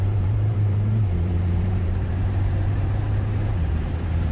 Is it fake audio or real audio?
fake